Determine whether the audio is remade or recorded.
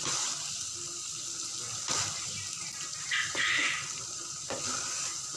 recorded